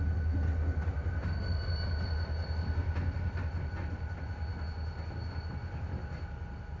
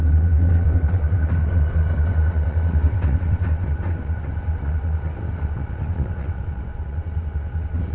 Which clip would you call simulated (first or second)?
second